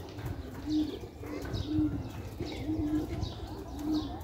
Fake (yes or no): no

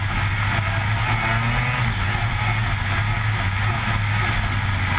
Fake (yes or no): no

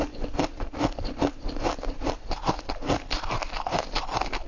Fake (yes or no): no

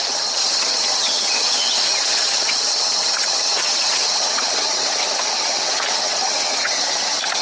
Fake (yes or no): yes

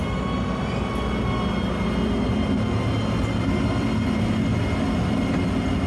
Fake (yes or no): no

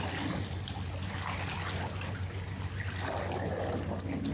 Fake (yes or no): no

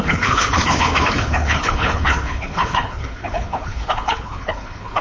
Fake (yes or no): yes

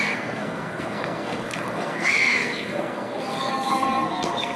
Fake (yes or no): yes